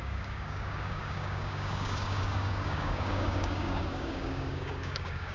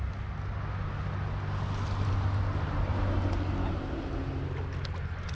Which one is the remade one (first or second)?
first